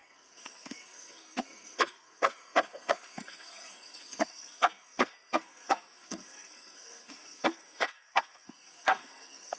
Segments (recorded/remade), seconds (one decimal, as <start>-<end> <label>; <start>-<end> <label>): 0.0-9.6 remade